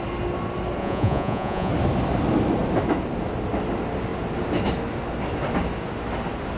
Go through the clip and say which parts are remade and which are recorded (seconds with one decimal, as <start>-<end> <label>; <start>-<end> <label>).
0.0-0.8 recorded; 0.8-1.7 remade; 1.7-6.6 recorded